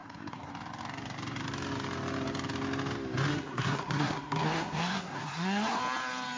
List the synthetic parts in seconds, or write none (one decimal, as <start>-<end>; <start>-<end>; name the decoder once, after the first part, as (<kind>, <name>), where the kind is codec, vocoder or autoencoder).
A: 0.0-0.5 (codec, SNAC); 3.3-5.8